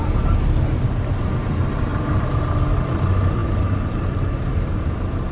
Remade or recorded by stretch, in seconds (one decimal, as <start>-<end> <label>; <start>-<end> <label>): 0.0-1.9 recorded; 1.9-2.4 remade; 2.4-5.3 recorded